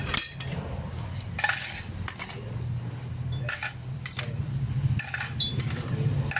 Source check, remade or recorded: remade